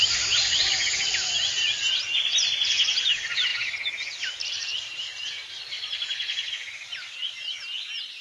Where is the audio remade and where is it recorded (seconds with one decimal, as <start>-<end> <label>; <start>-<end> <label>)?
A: 0.0-8.2 recorded